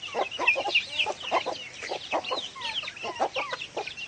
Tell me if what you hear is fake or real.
real